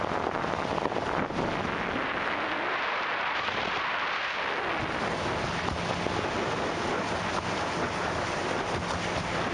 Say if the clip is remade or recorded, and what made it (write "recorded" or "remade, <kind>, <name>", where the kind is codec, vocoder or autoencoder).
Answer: recorded